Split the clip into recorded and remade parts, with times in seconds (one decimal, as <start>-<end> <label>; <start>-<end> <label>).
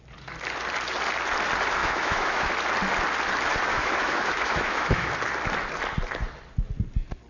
0.0-1.8 recorded; 1.8-2.5 remade; 2.5-3.7 recorded; 3.7-5.1 remade; 5.1-7.3 recorded